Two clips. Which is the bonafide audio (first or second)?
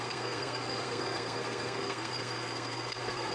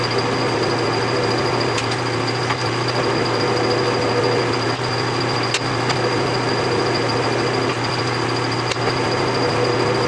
second